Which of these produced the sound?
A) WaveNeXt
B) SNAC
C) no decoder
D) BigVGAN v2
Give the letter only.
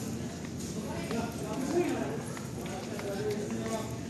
C